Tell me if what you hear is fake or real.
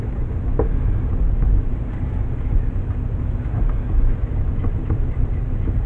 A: fake